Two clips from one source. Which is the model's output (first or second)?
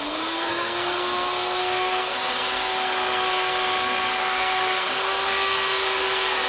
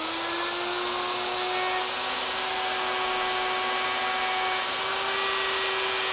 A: first